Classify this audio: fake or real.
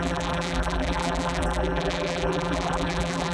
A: fake